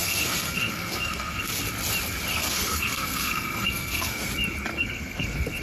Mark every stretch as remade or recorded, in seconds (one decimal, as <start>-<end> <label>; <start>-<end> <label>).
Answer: 0.0-1.4 remade; 1.4-2.3 recorded; 2.3-4.3 remade; 4.3-4.7 recorded; 4.7-5.6 remade